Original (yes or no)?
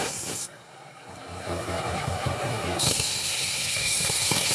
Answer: no